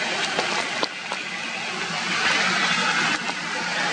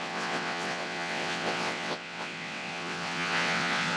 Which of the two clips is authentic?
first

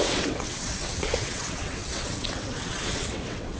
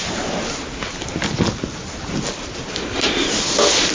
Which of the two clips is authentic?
second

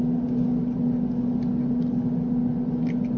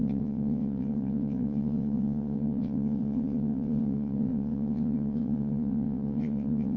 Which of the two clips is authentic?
first